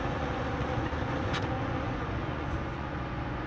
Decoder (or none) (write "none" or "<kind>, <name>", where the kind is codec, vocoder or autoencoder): vocoder, Vocos